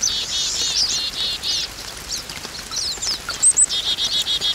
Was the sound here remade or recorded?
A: recorded